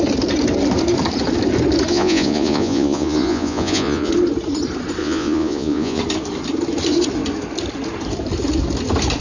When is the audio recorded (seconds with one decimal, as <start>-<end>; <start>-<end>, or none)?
0.0-1.9; 4.1-5.0; 6.0-9.2